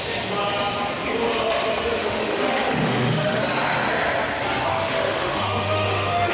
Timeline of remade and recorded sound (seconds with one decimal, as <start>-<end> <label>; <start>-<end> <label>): 0.0-2.0 recorded; 2.0-3.4 remade; 3.4-4.7 recorded; 4.7-6.3 remade